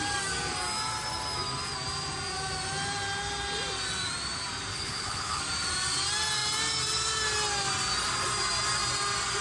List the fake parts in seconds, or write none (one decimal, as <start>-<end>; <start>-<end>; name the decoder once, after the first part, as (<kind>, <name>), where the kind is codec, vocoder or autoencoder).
4.7-5.4 (codec, HILCodec)